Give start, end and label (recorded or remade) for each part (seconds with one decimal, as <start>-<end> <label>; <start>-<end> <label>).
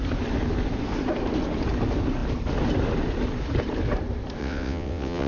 0.0-4.4 recorded; 4.4-5.3 remade